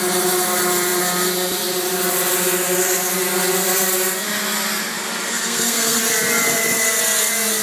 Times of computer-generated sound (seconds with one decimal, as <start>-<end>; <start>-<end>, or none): 5.3-6.0